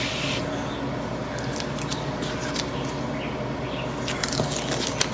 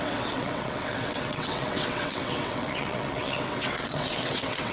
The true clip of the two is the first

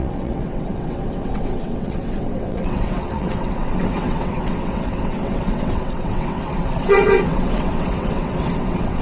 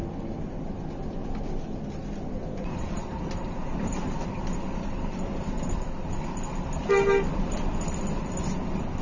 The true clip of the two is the second